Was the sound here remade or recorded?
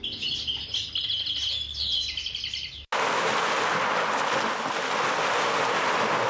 recorded